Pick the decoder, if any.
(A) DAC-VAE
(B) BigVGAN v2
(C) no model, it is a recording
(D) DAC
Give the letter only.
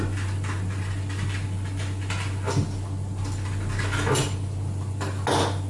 C